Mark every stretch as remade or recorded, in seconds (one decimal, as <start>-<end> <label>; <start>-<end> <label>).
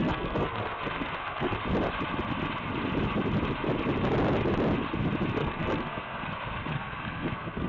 0.0-1.6 remade; 1.6-5.4 recorded; 5.4-6.3 remade; 6.3-6.7 recorded; 6.7-7.7 remade